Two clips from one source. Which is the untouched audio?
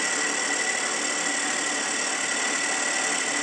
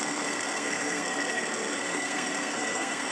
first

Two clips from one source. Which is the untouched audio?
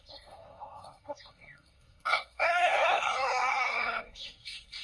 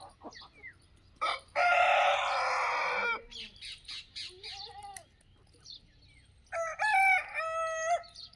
second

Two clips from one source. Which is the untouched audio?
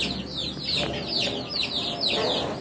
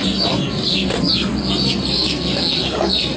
first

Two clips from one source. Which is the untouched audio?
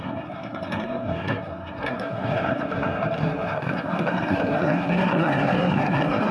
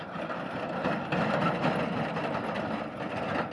second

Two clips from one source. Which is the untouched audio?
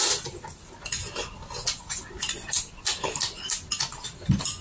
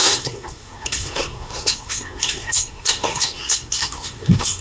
first